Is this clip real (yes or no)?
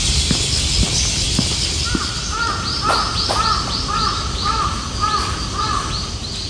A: yes